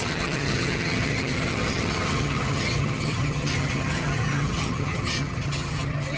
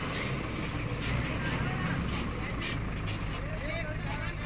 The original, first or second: second